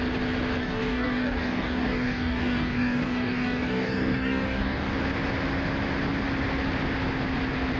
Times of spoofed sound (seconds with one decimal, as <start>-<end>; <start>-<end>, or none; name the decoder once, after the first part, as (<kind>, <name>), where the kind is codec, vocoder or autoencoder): 0.6-4.9 (codec, DAC)